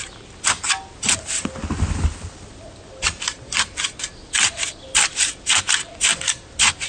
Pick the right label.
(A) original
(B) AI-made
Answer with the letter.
A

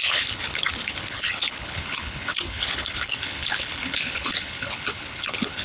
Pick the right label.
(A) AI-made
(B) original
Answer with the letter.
A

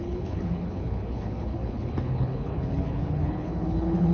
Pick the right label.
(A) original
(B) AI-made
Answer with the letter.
B